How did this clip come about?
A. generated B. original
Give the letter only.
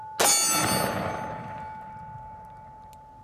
B